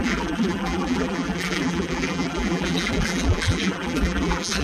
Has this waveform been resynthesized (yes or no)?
yes